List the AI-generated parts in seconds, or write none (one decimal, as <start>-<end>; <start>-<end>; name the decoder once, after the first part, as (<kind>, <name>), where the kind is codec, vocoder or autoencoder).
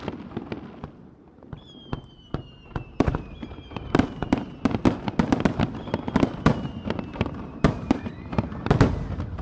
1.0-4.8 (vocoder, BigVGAN v2); 7.1-8.7